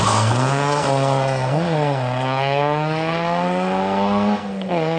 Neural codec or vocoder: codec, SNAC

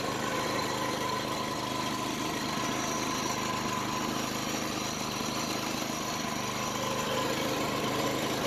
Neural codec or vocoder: none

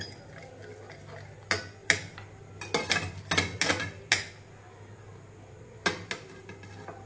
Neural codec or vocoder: none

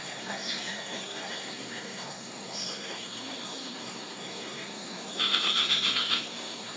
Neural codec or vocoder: codec, SNAC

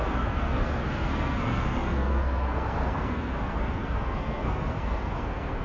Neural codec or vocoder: codec, SNAC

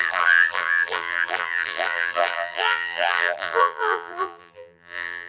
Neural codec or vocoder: vocoder, BigVGAN v2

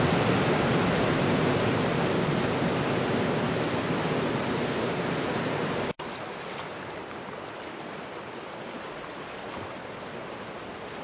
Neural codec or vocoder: none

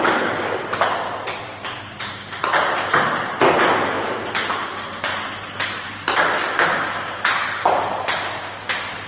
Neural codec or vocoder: none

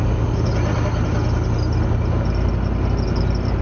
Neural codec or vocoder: none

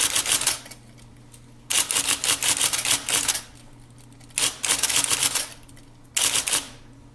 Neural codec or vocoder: none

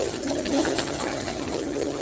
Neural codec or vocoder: vocoder, HiFi-GAN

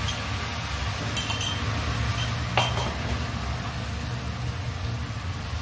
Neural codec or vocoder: none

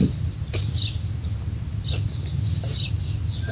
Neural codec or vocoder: none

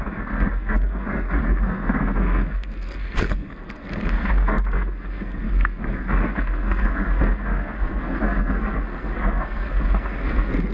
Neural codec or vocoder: codec, SNAC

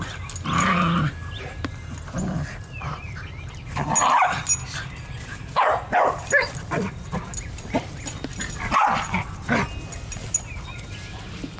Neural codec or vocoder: none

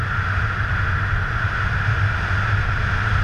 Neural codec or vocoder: none